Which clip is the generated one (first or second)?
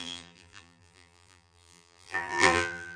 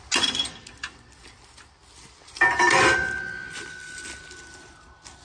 first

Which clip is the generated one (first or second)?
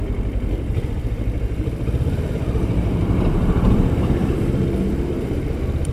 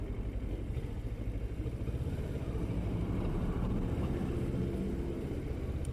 first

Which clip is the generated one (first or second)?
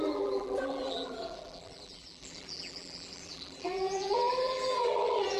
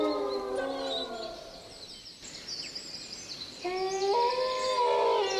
first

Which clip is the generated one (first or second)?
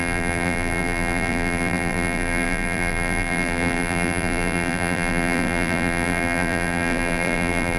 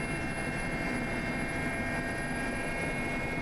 first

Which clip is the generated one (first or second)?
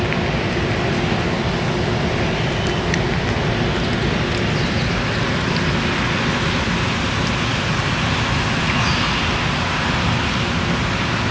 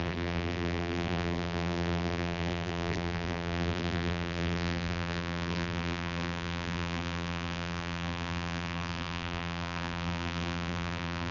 second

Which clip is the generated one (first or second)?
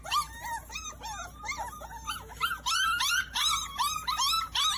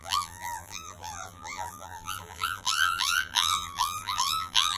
second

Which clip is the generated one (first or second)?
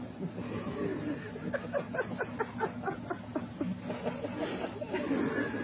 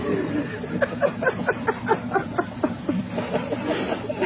second